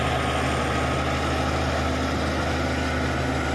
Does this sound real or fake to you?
real